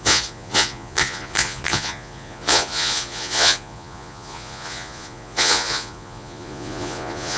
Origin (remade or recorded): remade